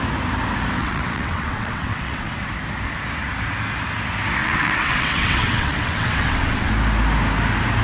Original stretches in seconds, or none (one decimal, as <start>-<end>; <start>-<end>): 0.0-0.8; 2.4-4.4; 6.7-7.8